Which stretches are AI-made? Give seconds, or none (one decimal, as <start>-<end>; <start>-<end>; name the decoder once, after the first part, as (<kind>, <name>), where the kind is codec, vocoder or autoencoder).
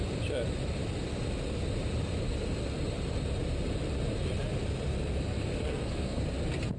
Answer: 5.7-6.2 (codec, SNAC)